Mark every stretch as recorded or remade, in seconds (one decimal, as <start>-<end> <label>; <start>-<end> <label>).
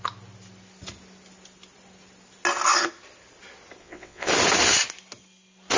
0.0-3.8 recorded; 3.8-4.3 remade; 4.3-5.8 recorded